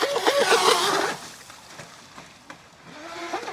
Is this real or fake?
real